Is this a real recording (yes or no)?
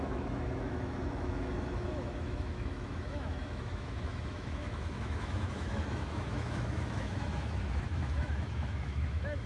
no